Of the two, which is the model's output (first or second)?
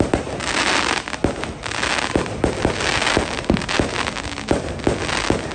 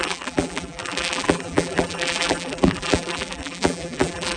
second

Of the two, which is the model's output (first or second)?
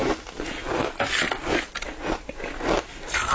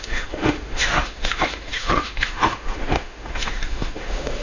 second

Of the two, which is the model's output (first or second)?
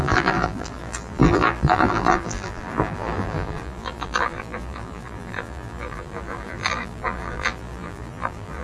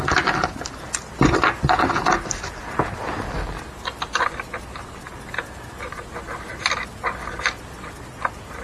first